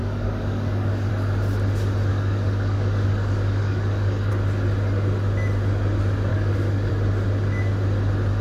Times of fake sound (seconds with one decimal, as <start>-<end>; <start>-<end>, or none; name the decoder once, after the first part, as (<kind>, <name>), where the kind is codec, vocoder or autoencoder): 0.0-1.1 (codec, DAC); 2.1-4.3; 6.3-6.9